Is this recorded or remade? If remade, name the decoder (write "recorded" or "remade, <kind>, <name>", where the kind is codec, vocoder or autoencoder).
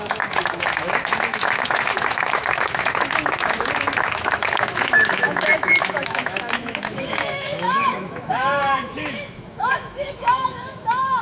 remade, autoencoder, DAC-VAE